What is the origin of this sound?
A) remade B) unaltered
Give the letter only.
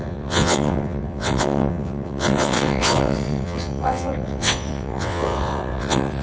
A